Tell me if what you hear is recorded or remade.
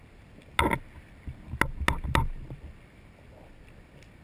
recorded